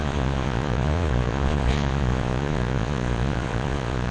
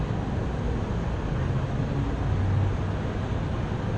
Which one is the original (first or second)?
second